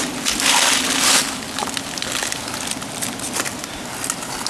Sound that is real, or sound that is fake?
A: real